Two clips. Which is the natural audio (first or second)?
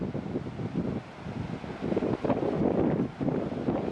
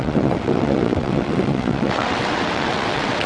first